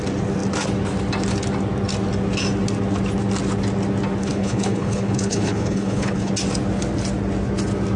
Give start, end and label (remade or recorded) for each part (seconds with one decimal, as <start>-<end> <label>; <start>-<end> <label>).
0.0-4.2 recorded; 4.2-6.3 remade; 6.3-8.0 recorded